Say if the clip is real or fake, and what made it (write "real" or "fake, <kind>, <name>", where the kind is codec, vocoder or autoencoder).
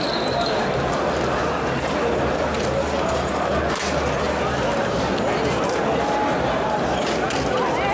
real